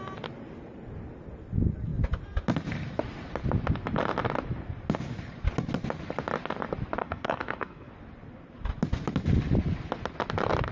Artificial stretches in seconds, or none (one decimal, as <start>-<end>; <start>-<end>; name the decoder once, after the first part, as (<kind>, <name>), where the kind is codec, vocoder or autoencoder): 7.0-7.9 (codec, SNAC)